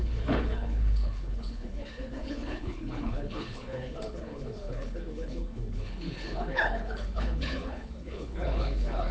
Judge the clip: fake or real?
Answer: fake